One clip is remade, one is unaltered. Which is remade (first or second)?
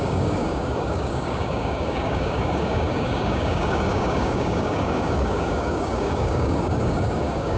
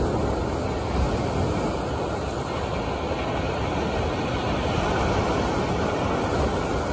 first